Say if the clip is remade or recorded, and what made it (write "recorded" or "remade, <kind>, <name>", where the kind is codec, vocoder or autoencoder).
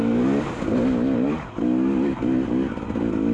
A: recorded